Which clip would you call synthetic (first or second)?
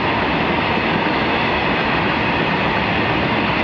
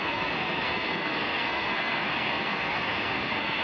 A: second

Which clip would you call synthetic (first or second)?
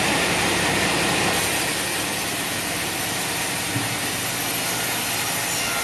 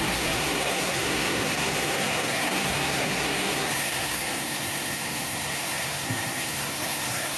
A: second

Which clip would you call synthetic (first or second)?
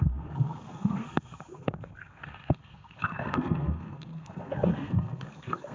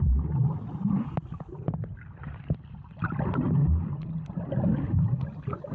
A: first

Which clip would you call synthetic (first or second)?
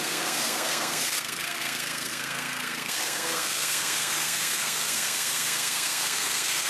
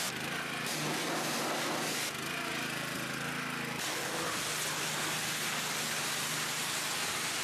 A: first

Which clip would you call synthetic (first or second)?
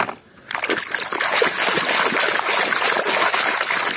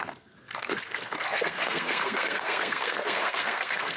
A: second